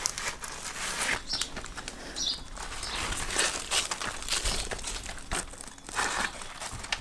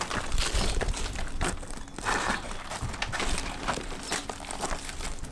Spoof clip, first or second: second